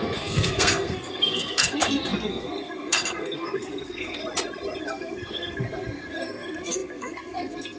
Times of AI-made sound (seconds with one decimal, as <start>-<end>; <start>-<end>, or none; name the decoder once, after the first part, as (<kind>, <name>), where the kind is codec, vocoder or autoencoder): 0.0-4.2 (codec, SNAC); 4.8-7.8